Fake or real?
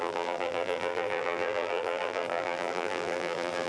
fake